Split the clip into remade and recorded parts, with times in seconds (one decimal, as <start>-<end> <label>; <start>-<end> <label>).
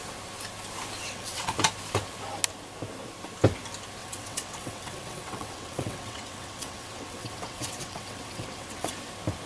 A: 0.0-1.0 recorded; 1.0-1.5 remade; 1.5-4.0 recorded; 4.0-8.9 remade; 8.9-9.5 recorded